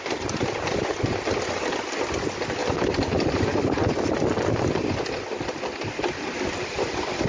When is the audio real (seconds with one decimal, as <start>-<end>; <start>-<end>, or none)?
0.0-7.3